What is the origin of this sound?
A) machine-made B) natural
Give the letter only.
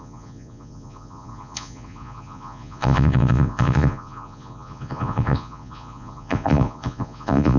A